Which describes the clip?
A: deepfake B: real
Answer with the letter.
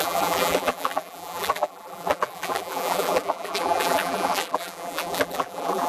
A